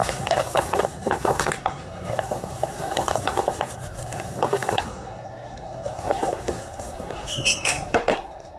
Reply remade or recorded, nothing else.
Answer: remade